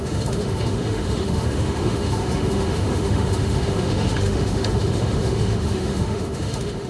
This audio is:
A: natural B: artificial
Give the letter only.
B